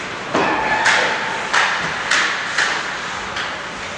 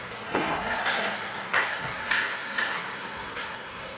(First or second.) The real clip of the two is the first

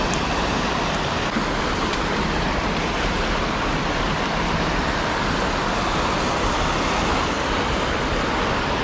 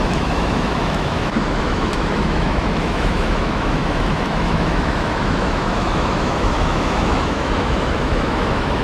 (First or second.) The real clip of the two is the first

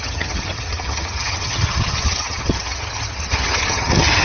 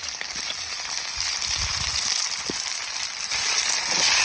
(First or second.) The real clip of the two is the second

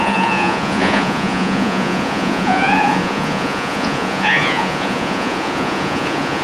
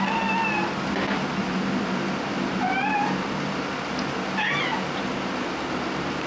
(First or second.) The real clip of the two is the second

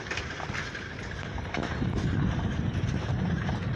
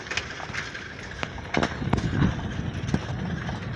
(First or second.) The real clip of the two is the second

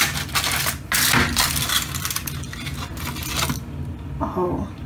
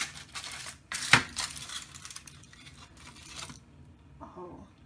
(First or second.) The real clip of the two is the first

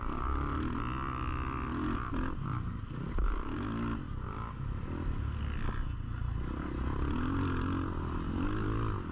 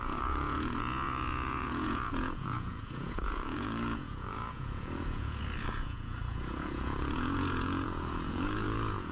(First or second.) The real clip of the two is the first